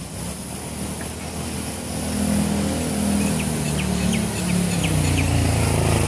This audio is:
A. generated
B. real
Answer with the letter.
B